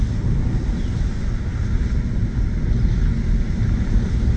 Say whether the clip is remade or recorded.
recorded